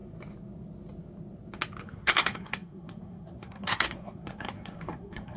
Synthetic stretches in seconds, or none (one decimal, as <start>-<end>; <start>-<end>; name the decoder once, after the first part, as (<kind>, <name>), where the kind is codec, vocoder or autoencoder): 1.8-5.4 (codec, SNAC)